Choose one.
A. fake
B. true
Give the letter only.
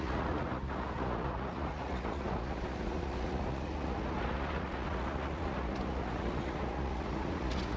A